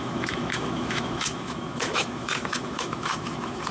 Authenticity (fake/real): fake